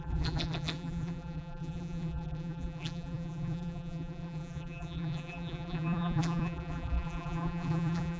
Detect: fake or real fake